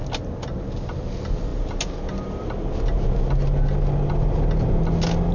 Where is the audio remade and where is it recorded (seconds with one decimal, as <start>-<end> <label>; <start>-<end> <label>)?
0.0-5.3 recorded